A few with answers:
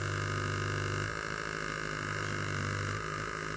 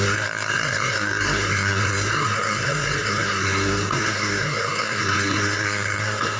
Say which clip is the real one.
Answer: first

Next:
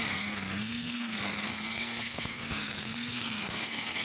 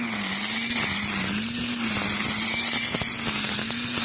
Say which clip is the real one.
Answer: second